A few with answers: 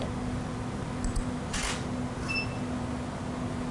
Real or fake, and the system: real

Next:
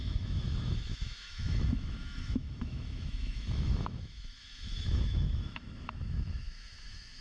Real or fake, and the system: fake, autoencoder, DAC-VAE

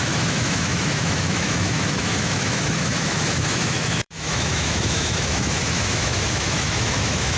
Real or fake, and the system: fake, autoencoder, DAC-VAE